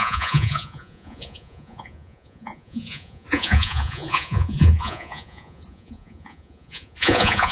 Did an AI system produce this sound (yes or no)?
yes